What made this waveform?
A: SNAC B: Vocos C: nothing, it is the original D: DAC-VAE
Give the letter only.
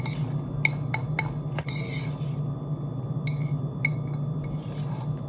C